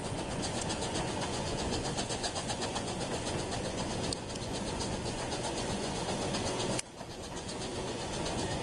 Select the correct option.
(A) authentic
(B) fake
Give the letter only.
B